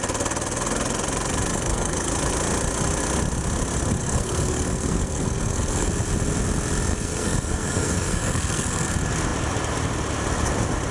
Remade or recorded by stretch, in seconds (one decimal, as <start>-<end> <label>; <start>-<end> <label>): 0.0-1.5 recorded; 1.5-2.1 remade; 2.1-4.0 recorded; 4.0-5.9 remade; 5.9-6.9 recorded; 6.9-8.9 remade; 8.9-10.9 recorded